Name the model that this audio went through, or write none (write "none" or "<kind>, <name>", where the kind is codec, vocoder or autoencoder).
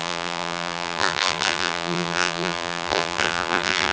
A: vocoder, BigVGAN v2